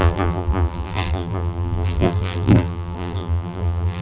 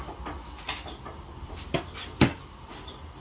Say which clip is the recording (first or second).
second